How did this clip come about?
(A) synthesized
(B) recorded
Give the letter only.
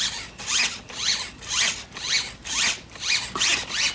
B